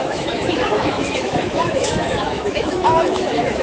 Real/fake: fake